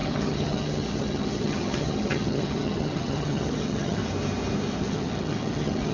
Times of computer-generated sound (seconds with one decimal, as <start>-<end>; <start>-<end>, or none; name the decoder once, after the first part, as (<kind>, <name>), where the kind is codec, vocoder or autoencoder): 0.0-4.0 (vocoder, HiFi-GAN); 4.8-5.9